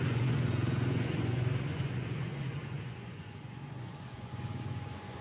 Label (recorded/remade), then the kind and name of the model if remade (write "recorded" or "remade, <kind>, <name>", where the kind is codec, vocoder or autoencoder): remade, vocoder, Vocos